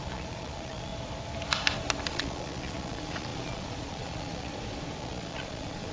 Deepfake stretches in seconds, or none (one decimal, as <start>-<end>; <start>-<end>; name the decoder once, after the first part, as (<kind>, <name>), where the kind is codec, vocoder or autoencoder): 0.0-0.9 (vocoder, Vocos); 2.1-4.5; 5.0-5.9